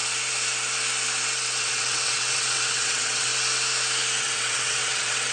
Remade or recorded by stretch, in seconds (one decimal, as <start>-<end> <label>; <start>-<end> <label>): 0.0-1.6 recorded; 1.6-3.3 remade; 3.3-4.2 recorded; 4.2-5.3 remade